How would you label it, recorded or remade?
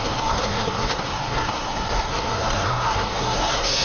remade